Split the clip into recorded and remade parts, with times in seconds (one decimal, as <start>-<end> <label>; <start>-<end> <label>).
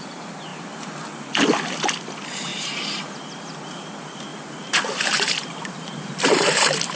0.0-2.5 recorded; 2.5-3.1 remade; 3.1-4.3 recorded; 4.3-6.6 remade; 6.6-7.0 recorded